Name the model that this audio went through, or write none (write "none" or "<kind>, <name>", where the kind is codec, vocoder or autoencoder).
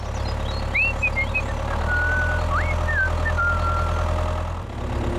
none